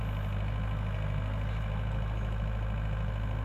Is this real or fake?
real